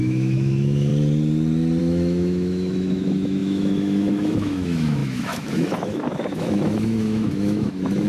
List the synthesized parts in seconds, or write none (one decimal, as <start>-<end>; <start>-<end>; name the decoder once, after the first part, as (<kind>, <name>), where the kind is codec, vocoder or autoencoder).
0.0-0.9 (autoencoder, DAC-VAE); 1.8-8.1